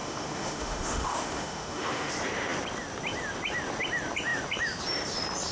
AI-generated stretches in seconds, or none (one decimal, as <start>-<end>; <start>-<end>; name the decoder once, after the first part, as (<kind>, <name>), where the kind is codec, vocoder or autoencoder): 0.0-2.1 (autoencoder, DAC-VAE)